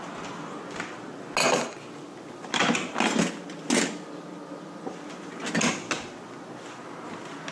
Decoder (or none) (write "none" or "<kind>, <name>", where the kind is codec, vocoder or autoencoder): none